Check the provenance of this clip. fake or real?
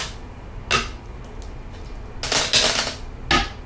real